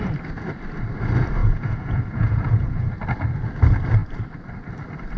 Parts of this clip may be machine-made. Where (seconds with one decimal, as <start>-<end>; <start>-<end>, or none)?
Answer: 1.4-2.9